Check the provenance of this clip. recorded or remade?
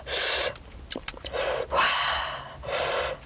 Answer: recorded